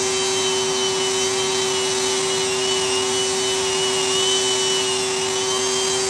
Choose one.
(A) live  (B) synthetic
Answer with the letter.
A